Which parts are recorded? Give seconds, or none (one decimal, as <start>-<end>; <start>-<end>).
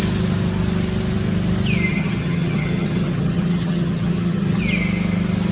0.0-1.9; 4.6-5.5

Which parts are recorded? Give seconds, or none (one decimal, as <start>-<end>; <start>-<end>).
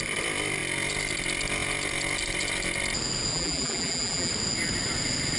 0.0-3.3; 4.3-5.4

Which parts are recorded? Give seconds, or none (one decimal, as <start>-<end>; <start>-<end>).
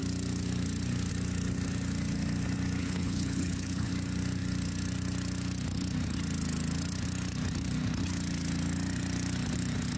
0.0-2.8; 3.9-10.0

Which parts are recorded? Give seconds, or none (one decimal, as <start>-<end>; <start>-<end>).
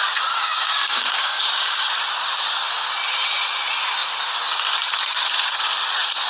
0.0-0.4; 1.9-6.3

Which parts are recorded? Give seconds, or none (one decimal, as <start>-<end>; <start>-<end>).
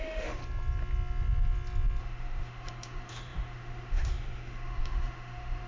0.4-2.0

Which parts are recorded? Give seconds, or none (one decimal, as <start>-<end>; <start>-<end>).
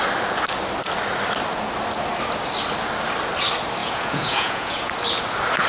0.0-3.8; 4.9-5.7